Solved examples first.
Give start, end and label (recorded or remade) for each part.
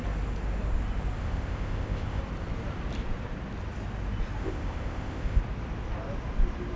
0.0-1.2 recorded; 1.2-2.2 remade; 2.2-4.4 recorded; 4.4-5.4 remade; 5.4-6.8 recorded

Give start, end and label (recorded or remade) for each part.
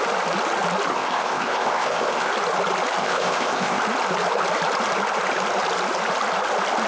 0.0-0.9 recorded; 0.9-2.3 remade; 2.3-3.0 recorded; 3.0-3.8 remade; 3.8-6.9 recorded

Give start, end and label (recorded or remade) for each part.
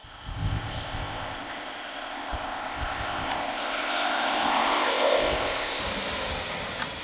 0.0-5.8 remade; 5.8-7.0 recorded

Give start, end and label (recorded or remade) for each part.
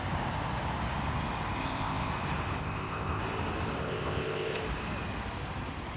0.0-1.6 recorded; 1.6-2.1 remade; 2.1-2.6 recorded; 2.6-3.2 remade; 3.2-3.8 recorded; 3.8-4.6 remade; 4.6-6.0 recorded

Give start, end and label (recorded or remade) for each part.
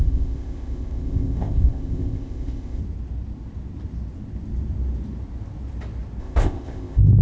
0.0-2.8 remade; 2.8-6.2 recorded; 6.2-7.2 remade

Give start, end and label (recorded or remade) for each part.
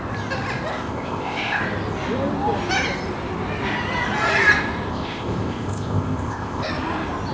0.0-0.7 recorded; 0.7-1.6 remade; 1.6-4.9 recorded; 4.9-6.7 remade; 6.7-7.3 recorded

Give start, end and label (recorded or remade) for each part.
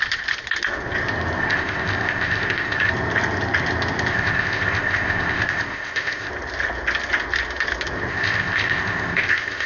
0.0-1.4 recorded; 1.4-2.9 remade; 2.9-4.1 recorded; 4.1-6.3 remade; 6.3-8.1 recorded; 8.1-9.7 remade